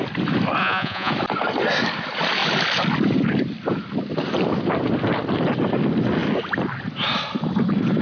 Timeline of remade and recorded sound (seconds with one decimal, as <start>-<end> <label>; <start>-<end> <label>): 0.0-0.6 recorded; 0.6-1.1 remade; 1.1-8.0 recorded